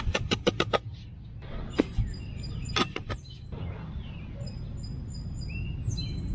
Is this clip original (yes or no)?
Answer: yes